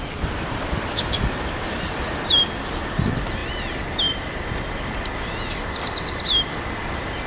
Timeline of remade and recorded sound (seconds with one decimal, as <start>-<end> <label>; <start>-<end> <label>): 0.0-7.3 recorded